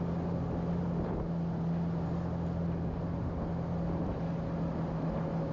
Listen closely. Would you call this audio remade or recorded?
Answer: recorded